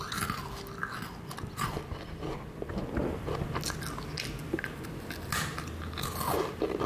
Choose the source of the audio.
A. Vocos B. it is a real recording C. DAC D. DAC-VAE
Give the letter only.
B